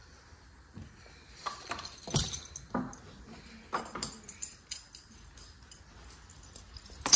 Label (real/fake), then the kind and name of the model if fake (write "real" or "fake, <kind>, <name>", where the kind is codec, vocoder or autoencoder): real